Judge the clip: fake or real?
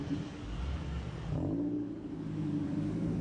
fake